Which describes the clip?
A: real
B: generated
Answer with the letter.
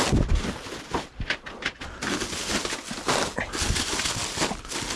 A